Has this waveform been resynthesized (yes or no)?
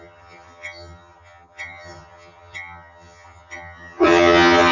yes